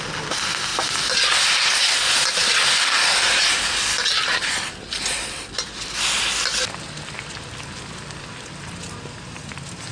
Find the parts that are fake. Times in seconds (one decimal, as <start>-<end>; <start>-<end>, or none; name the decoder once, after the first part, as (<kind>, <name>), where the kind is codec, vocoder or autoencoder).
none